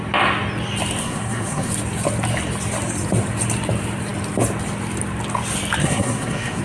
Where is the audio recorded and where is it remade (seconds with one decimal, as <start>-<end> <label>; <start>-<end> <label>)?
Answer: 0.0-1.0 recorded; 1.0-1.7 remade; 1.7-5.8 recorded; 5.8-6.6 remade